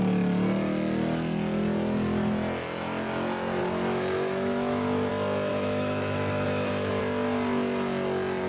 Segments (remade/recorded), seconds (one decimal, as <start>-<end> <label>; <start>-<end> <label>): 0.0-3.6 recorded; 3.6-5.1 remade; 5.1-5.5 recorded; 5.5-7.0 remade; 7.0-8.5 recorded